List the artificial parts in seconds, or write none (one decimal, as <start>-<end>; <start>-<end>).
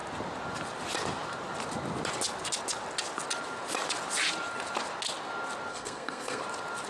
5.7-6.4